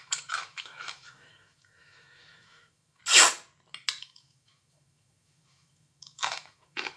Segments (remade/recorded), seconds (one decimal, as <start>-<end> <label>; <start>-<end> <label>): 0.0-3.0 remade; 3.0-4.0 recorded; 4.0-7.0 remade